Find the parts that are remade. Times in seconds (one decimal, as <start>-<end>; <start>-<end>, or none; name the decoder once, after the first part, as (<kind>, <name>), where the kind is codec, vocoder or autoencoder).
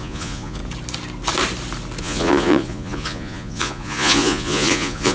0.0-0.6 (vocoder, Vocos); 2.0-5.1